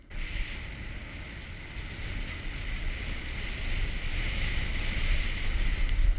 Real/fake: real